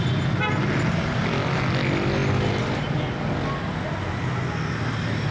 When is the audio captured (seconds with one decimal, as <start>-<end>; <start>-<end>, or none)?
0.0-5.3